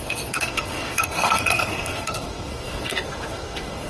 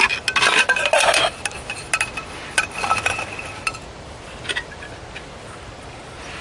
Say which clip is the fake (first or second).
first